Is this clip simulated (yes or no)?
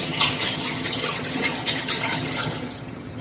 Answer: yes